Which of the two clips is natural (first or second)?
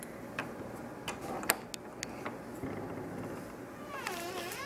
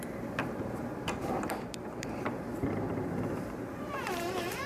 first